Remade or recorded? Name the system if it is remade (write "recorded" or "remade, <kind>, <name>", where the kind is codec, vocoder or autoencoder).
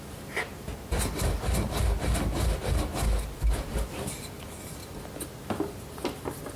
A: recorded